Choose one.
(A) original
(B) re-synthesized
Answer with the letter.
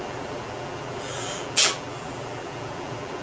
B